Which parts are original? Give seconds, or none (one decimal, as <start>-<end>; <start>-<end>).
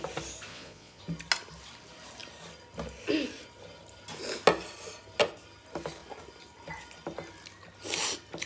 0.0-0.5; 1.0-8.5